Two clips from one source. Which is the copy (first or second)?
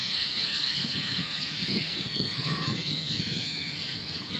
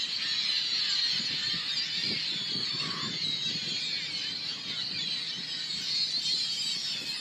first